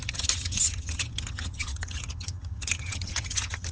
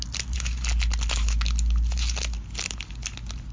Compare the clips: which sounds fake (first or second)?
first